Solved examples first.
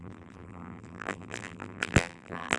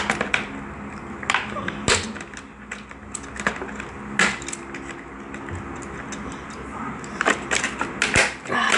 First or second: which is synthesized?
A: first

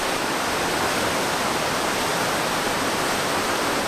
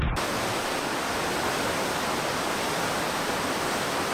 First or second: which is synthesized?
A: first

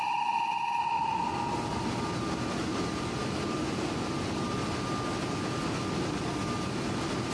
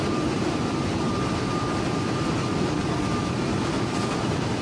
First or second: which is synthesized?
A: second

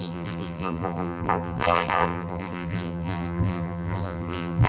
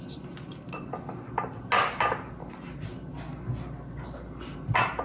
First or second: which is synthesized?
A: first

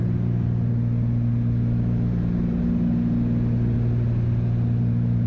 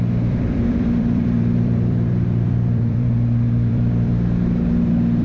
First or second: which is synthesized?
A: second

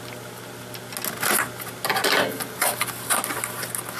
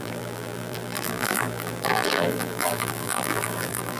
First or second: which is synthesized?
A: second